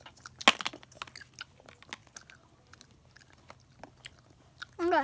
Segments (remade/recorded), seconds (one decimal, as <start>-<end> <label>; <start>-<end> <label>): 0.0-5.0 recorded